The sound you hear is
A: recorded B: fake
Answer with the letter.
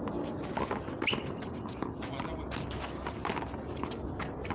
A